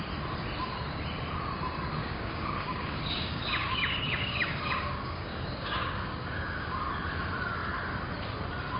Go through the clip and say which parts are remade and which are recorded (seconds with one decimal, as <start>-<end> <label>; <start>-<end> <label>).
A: 0.0-2.0 recorded; 2.0-6.8 remade; 6.8-8.8 recorded